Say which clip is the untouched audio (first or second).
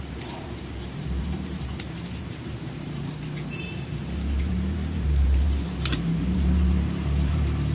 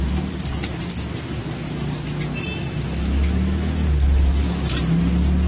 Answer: second